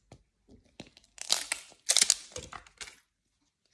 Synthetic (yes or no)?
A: no